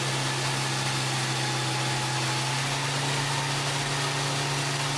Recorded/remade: recorded